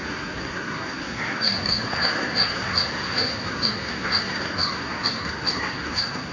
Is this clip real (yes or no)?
no